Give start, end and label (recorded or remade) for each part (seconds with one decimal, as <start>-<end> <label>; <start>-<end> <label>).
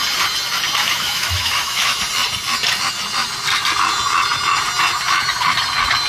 0.0-0.8 recorded; 0.8-2.0 remade; 2.0-6.1 recorded